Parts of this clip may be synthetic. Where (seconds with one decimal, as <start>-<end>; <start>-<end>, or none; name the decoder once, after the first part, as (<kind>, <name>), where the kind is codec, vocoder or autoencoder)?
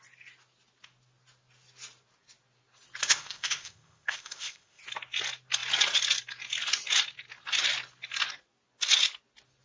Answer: 3.0-4.8 (codec, ZipCodec)